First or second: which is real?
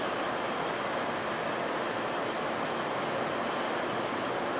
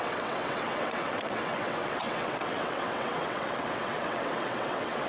first